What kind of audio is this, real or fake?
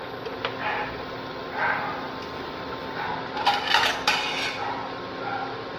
fake